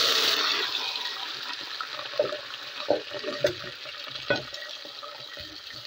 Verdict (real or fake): real